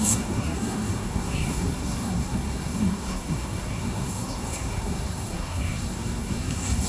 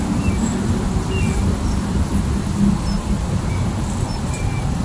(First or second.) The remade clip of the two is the first